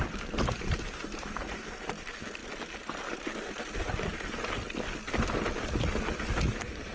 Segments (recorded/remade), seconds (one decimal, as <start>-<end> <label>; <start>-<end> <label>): 0.0-2.4 remade; 2.4-6.5 recorded; 6.5-6.9 remade